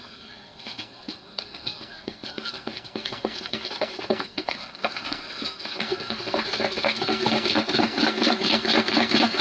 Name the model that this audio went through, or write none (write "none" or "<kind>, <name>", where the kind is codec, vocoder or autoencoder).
codec, SNAC